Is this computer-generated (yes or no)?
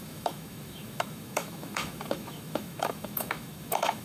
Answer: yes